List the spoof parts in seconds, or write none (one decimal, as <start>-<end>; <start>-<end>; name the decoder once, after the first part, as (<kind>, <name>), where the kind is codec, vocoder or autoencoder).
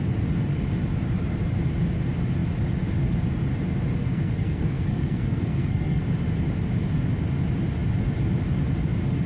4.0-6.0 (codec, SNAC)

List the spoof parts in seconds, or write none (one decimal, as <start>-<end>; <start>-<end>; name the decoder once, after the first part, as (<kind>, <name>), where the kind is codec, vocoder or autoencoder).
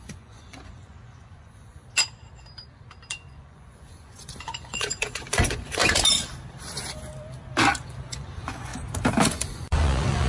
0.0-1.8 (vocoder, Vocos); 3.1-5.8; 7.8-8.7; 9.3-10.3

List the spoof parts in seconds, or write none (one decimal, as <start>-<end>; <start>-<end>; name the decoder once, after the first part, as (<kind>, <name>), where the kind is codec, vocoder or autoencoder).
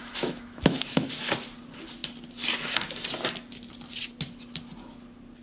0.0-1.1 (autoencoder, DAC-VAE)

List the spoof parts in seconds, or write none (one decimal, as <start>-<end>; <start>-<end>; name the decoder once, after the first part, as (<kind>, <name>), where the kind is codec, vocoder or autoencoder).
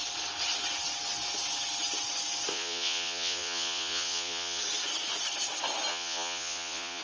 2.5-4.6 (vocoder, Vocos); 5.9-7.0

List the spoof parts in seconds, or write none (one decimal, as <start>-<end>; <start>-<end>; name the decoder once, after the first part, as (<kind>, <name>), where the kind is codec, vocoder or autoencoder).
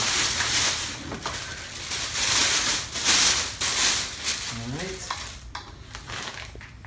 2.4-2.9 (vocoder, BigVGAN v2)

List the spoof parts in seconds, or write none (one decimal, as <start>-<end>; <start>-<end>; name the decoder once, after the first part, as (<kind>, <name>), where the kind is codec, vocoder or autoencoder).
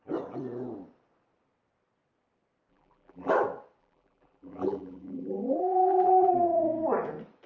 2.7-3.3 (vocoder, BigVGAN v2); 3.8-6.3